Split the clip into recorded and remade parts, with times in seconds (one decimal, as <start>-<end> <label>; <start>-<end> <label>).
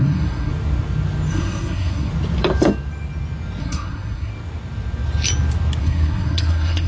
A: 0.0-0.5 remade; 0.5-1.3 recorded; 1.3-2.1 remade; 2.1-3.6 recorded; 3.6-4.3 remade; 4.3-5.8 recorded; 5.8-6.9 remade